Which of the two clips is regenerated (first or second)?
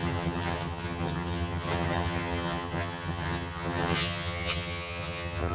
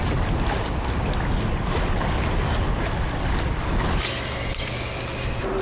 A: first